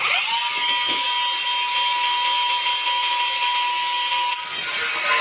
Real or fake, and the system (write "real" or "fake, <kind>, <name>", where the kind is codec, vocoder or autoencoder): real